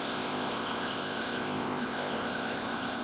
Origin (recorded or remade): remade